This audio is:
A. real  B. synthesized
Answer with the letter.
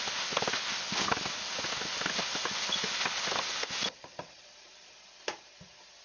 A